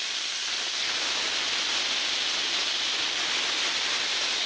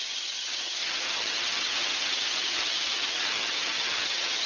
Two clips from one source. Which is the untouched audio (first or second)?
first